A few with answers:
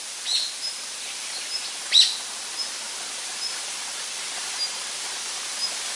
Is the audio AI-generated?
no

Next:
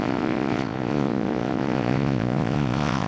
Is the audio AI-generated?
yes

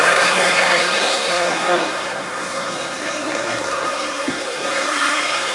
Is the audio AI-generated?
yes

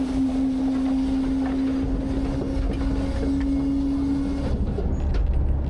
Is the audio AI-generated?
no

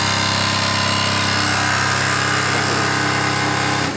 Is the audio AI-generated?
no